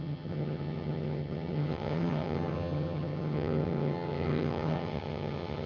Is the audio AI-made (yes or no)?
yes